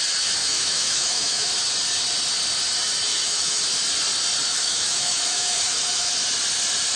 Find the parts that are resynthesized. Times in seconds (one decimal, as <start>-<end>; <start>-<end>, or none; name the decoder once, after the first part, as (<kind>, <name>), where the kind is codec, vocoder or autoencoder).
0.4-1.5 (autoencoder, DAC-VAE); 3.1-3.6; 4.5-6.1